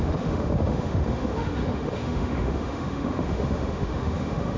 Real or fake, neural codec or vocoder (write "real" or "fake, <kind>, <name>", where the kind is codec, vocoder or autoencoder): fake, autoencoder, DAC-VAE